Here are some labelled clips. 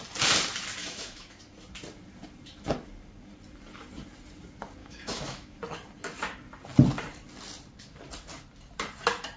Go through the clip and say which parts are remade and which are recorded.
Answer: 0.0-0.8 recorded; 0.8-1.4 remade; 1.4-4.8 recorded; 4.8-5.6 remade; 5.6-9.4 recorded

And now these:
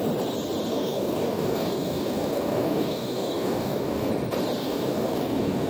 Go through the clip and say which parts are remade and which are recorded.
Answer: 0.0-0.7 recorded; 0.7-4.1 remade; 4.1-4.6 recorded; 4.6-5.7 remade

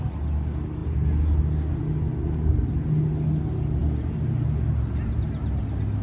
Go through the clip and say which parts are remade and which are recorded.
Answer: 0.0-6.0 recorded

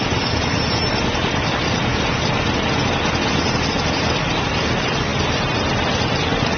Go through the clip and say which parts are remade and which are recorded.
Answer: 0.0-6.6 recorded

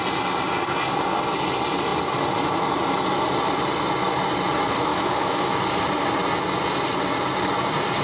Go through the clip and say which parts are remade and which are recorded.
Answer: 0.0-4.9 recorded; 4.9-5.5 remade; 5.5-8.0 recorded